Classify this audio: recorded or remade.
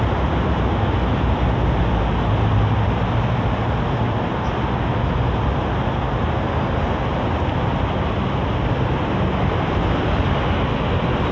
recorded